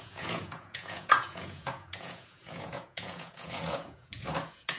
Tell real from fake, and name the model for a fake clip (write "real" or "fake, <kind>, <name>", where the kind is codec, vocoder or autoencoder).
fake, vocoder, Vocos